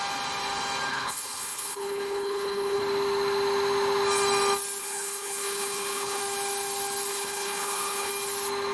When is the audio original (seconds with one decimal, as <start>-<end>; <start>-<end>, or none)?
0.0-0.9; 2.8-4.8; 6.2-7.1; 8.1-8.7